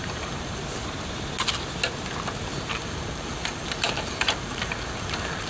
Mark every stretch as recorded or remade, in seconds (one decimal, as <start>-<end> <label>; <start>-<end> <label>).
0.0-0.6 remade; 0.6-2.7 recorded; 2.7-5.5 remade